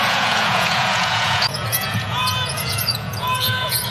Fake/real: fake